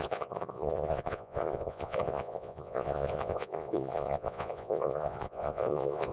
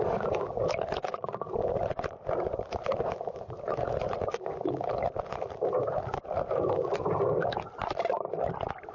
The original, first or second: second